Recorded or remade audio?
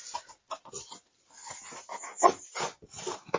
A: recorded